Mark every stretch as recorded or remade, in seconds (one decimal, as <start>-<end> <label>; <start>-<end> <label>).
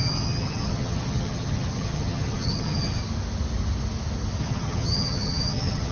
0.0-3.0 remade; 3.0-4.4 recorded; 4.4-5.9 remade